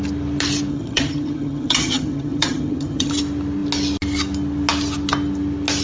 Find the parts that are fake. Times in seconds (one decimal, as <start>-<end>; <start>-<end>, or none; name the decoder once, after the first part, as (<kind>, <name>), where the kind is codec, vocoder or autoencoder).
0.7-3.1 (vocoder, HiFi-GAN)